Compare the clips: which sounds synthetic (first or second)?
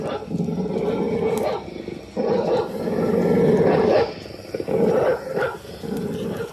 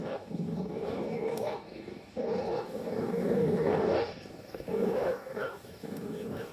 second